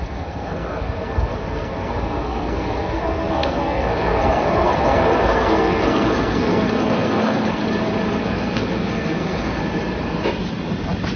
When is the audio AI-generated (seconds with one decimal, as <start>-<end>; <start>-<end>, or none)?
0.0-7.6; 8.2-9.6